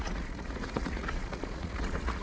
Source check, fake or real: fake